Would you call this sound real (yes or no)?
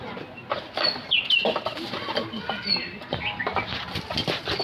yes